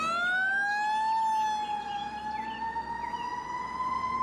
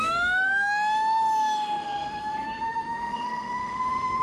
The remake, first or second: second